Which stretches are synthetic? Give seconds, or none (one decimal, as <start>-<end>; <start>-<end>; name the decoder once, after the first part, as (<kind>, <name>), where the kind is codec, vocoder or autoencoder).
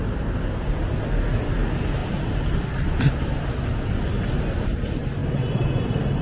2.0-3.2 (vocoder, BigVGAN v2); 5.2-6.2